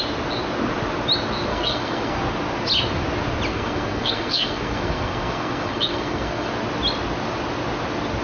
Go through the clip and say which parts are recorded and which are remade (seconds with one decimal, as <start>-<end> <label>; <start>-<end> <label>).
0.0-1.5 recorded; 1.5-2.2 remade; 2.2-3.5 recorded; 3.5-6.5 remade; 6.5-8.2 recorded